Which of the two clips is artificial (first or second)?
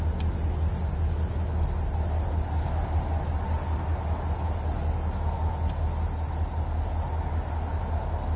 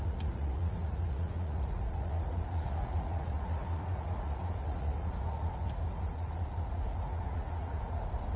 second